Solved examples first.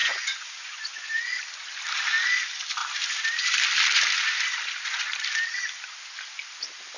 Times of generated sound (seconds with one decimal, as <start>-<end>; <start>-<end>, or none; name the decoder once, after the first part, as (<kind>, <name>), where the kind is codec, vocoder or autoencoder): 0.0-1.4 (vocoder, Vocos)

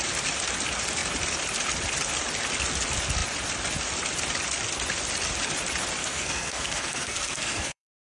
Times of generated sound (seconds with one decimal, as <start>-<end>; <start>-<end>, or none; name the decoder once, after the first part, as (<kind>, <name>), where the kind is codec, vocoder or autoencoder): 6.0-8.1 (codec, SNAC)

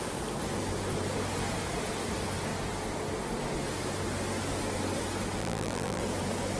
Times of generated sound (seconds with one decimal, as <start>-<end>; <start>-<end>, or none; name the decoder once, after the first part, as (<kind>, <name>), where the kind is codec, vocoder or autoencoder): 5.4-6.0 (vocoder, BigVGAN v2)